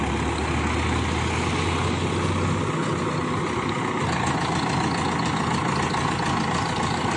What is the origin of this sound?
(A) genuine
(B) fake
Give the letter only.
A